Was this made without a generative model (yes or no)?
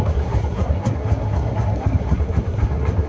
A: no